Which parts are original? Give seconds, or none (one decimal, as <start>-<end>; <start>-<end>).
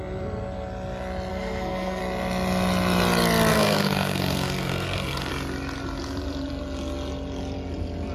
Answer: 0.0-1.3; 2.0-3.5; 5.3-8.1